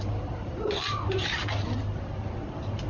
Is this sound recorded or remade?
recorded